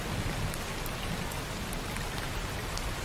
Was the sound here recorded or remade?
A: recorded